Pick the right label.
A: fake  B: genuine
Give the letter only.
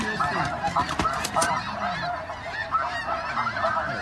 B